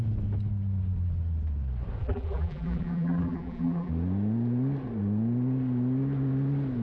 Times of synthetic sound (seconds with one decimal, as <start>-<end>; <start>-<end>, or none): 2.0-3.9